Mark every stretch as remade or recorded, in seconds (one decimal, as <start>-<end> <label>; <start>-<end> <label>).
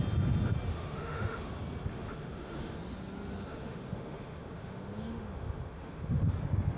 0.0-0.7 recorded; 0.7-1.5 remade; 1.5-1.9 recorded; 1.9-2.8 remade; 2.8-3.5 recorded; 3.5-6.3 remade; 6.3-6.8 recorded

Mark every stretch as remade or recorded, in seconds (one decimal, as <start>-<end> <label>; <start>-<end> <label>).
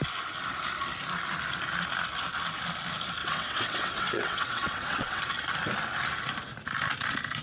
0.0-3.2 recorded; 3.2-5.2 remade; 5.2-7.4 recorded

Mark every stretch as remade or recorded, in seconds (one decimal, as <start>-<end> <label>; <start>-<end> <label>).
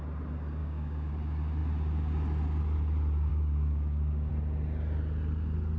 0.0-0.6 recorded; 0.6-1.1 remade; 1.1-3.3 recorded; 3.3-4.3 remade; 4.3-5.8 recorded